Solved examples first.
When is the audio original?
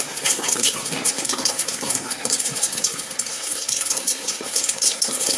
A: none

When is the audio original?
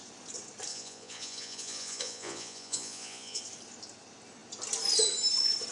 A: 0.0-0.7; 3.4-5.7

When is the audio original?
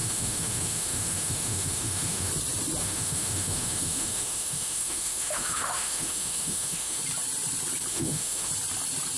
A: 2.3-2.8; 7.0-7.9; 8.5-9.2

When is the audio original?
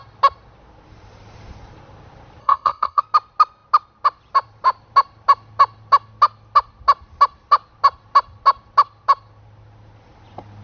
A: 0.0-2.4; 3.0-10.6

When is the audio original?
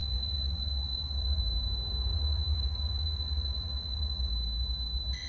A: 1.4-2.1; 4.3-5.3